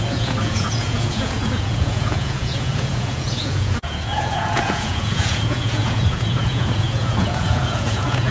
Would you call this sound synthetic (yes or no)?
yes